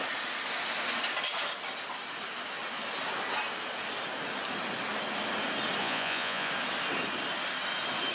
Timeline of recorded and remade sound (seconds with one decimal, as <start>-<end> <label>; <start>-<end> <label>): 0.0-5.8 recorded; 5.8-6.5 remade; 6.5-8.1 recorded